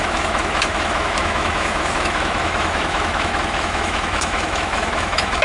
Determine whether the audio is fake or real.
fake